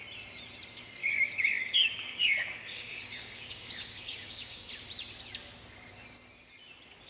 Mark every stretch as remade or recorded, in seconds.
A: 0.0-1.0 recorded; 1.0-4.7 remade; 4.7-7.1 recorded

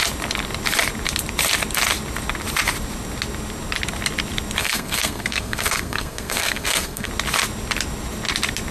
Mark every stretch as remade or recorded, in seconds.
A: 0.0-4.6 recorded; 4.6-7.1 remade; 7.1-8.7 recorded

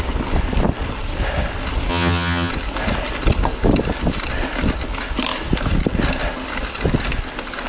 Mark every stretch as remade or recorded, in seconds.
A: 0.0-1.9 recorded; 1.9-2.5 remade; 2.5-7.7 recorded

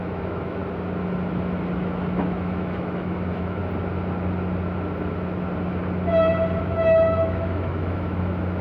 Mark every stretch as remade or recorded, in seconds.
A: 0.0-0.6 remade; 0.6-1.7 recorded; 1.7-3.6 remade; 3.6-6.6 recorded; 6.6-8.6 remade